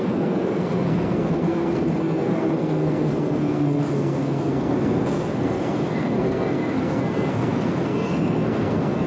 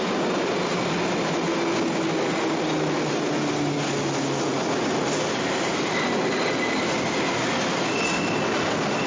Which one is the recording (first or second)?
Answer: second